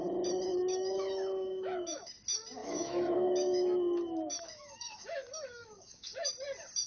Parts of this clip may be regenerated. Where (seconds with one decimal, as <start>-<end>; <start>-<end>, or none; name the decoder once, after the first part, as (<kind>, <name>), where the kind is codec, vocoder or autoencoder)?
0.5-2.1 (autoencoder, DAC-VAE); 2.6-6.3